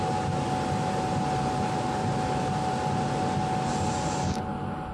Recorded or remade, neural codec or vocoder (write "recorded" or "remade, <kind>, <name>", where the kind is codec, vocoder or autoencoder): recorded